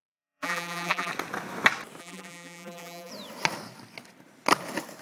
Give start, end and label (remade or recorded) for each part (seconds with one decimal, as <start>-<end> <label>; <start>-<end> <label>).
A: 0.0-1.1 remade; 1.1-2.0 recorded; 2.0-3.1 remade; 3.1-5.0 recorded